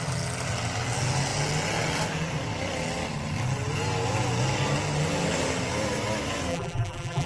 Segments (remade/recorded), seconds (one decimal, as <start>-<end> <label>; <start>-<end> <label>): 0.0-6.5 recorded; 6.5-7.3 remade